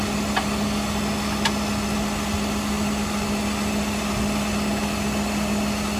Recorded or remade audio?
recorded